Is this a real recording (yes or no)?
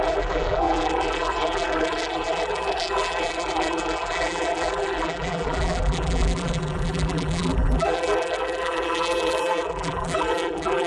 no